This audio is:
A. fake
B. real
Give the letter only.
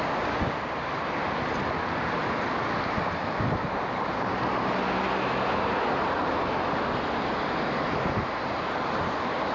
B